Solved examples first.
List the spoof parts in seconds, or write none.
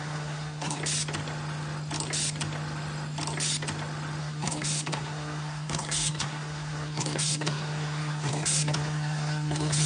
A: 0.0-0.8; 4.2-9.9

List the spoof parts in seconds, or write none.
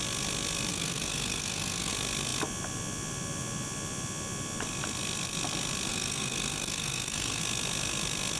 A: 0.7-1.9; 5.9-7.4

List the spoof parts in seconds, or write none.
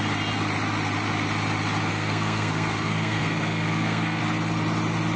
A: 1.9-4.2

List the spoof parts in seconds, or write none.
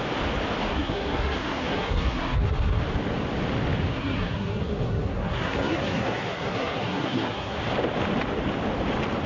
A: 0.7-2.8; 3.9-7.6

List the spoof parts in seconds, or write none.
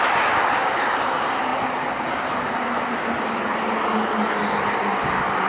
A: none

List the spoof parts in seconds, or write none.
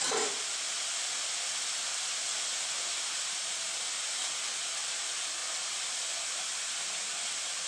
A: none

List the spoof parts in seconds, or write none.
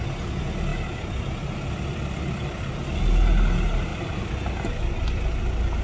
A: none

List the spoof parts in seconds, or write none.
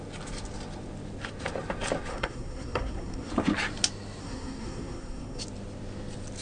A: 2.1-3.3; 4.2-5.4